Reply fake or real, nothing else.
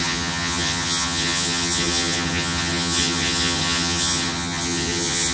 fake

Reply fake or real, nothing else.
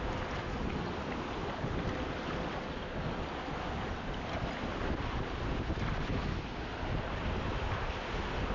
real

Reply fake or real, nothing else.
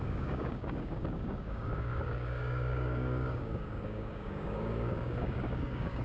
fake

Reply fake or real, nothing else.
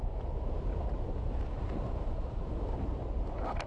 real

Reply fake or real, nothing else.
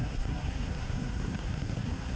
fake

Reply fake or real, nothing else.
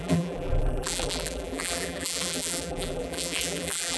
fake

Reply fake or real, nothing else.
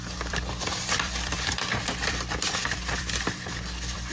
fake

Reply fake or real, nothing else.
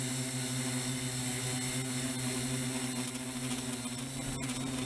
real